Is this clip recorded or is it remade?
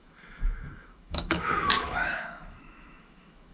remade